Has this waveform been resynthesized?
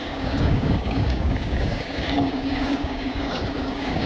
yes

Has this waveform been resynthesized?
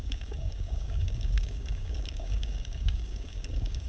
yes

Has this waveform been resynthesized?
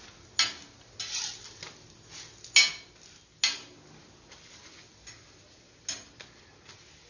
no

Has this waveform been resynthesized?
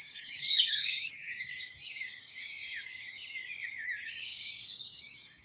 yes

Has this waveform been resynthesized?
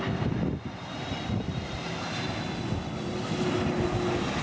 no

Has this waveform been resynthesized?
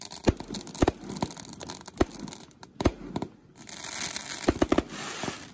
no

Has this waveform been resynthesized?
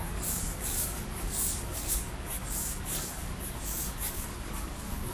yes